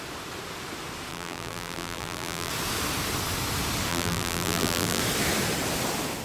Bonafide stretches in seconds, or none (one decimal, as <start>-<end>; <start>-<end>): 0.0-1.1; 2.5-3.9; 5.0-6.2